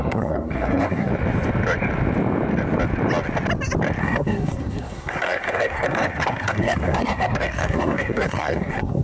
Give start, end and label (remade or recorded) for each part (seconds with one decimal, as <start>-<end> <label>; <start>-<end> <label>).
0.0-1.1 remade; 1.1-4.0 recorded; 4.0-9.0 remade